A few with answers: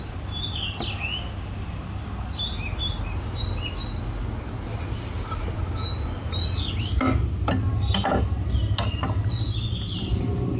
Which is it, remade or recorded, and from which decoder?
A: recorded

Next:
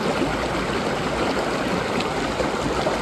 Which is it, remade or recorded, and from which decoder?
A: recorded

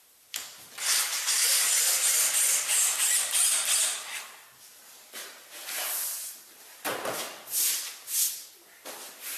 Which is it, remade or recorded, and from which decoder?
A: recorded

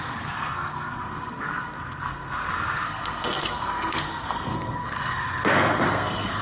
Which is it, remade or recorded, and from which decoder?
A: remade, codec, SNAC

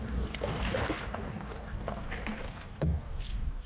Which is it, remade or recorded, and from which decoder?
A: remade, codec, DAC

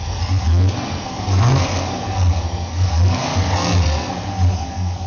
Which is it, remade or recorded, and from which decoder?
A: remade, codec, SNAC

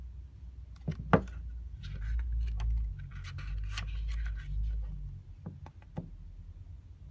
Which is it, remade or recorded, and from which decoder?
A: recorded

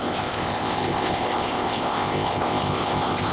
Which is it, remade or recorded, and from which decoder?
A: remade, codec, ZipCodec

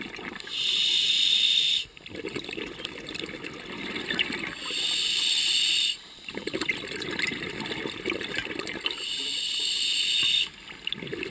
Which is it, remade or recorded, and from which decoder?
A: recorded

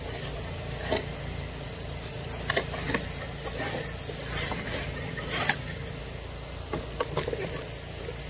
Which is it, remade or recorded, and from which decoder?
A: recorded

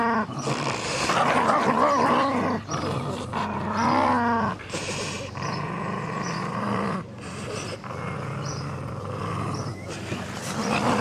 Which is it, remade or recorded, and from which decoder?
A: remade, vocoder, BigVGAN v2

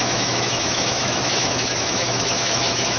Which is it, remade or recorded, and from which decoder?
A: remade, autoencoder, DAC-VAE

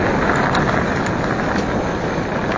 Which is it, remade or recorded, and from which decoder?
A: recorded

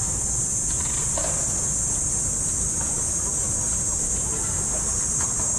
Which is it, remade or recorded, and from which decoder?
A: recorded